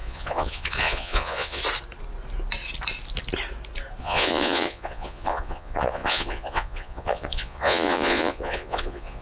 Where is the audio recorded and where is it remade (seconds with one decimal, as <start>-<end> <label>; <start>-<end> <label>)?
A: 0.0-1.6 remade; 1.6-4.0 recorded; 4.0-9.2 remade